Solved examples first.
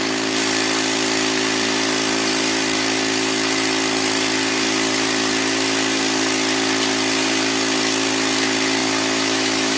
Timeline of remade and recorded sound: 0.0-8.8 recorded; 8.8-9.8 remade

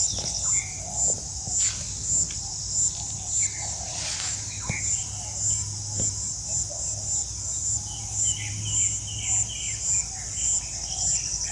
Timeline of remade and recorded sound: 0.0-11.5 recorded

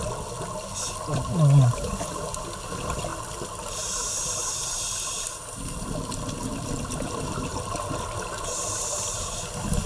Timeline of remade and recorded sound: 0.0-9.9 recorded

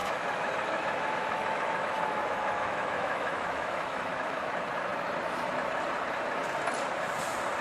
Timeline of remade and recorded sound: 0.0-4.4 remade; 4.4-7.6 recorded

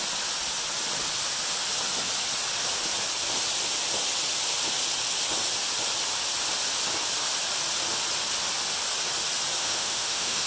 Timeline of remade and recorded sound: 0.0-9.6 recorded; 9.6-10.5 remade

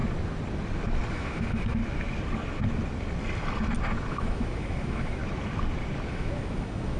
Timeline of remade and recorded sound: 0.0-1.1 recorded; 1.1-1.8 remade; 1.8-4.1 recorded; 4.1-5.2 remade; 5.2-6.1 recorded; 6.1-7.0 remade